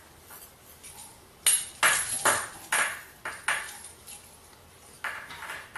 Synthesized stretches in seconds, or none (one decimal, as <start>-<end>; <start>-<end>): none